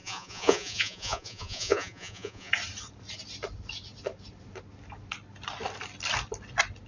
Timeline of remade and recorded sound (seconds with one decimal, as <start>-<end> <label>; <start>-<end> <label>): 0.0-2.5 remade; 2.5-6.9 recorded